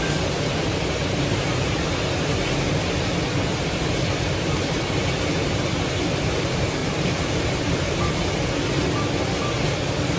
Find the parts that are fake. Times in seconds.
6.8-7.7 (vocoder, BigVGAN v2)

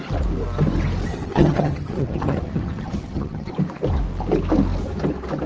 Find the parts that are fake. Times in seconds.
1.1-3.5 (vocoder, HiFi-GAN)